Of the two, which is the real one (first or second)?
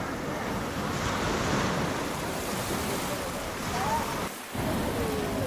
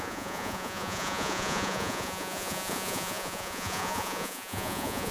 first